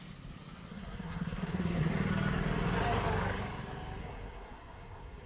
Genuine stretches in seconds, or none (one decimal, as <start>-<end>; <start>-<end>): 0.0-0.7; 1.9-4.0